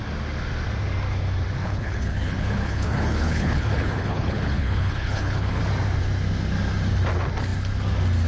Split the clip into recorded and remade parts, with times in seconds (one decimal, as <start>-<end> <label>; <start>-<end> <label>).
0.0-1.6 recorded; 1.6-5.6 remade; 5.6-8.3 recorded